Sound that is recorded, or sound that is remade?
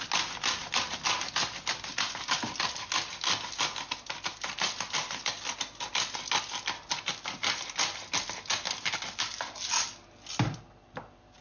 recorded